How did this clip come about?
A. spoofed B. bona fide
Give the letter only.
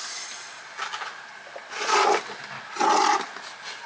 B